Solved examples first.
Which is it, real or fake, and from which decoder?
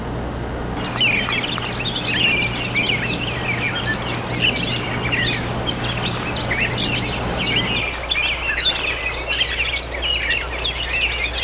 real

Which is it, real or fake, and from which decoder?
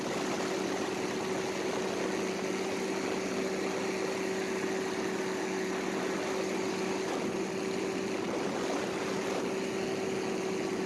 real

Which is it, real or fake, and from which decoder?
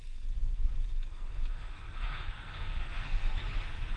fake, codec, SNAC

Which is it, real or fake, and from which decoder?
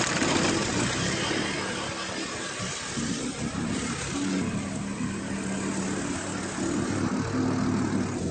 real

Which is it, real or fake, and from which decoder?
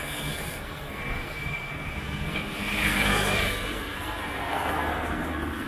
fake, codec, SNAC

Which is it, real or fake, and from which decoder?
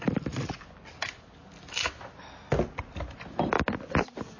real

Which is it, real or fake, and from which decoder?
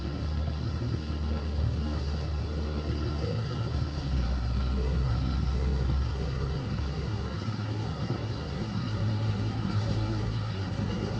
fake, codec, SNAC